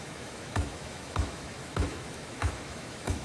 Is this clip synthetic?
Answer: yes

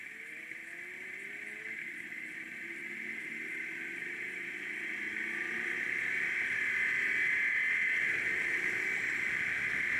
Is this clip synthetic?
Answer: no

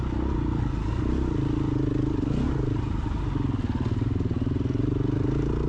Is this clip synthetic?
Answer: no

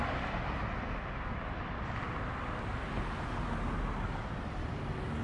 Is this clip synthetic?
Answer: no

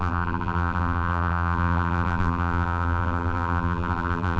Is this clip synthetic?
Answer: yes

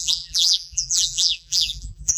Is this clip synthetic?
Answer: yes